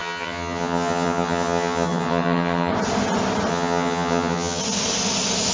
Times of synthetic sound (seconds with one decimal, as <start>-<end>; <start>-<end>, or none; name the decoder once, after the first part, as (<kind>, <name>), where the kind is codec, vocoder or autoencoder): 0.0-2.7 (vocoder, HiFi-GAN); 3.5-4.6